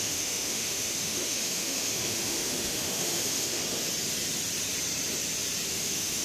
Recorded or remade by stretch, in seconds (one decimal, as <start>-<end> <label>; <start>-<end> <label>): 0.0-3.6 remade; 3.6-5.7 recorded; 5.7-6.2 remade